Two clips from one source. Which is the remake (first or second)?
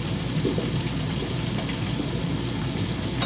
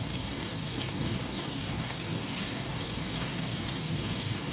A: second